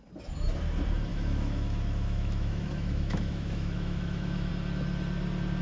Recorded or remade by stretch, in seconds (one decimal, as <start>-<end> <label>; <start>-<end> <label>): 0.0-1.1 recorded; 1.1-4.5 remade; 4.5-5.6 recorded